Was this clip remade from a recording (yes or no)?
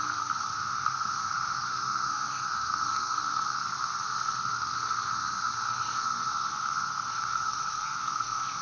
yes